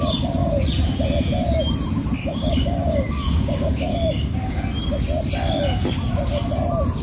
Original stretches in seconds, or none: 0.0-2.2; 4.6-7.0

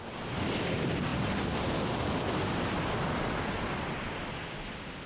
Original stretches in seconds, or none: 0.0-5.1

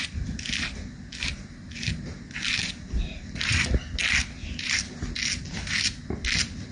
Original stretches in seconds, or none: 0.0-6.7